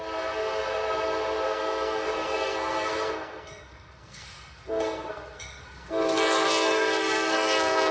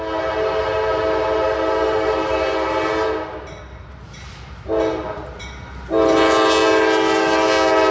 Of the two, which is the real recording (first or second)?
second